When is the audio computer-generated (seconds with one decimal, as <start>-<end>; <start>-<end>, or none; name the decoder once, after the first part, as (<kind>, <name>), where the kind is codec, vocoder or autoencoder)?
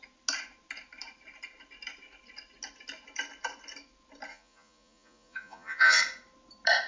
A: 4.3-6.0 (vocoder, Vocos)